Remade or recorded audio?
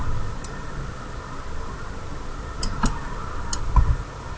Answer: recorded